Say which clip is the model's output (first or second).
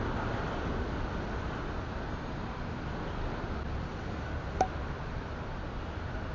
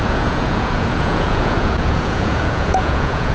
second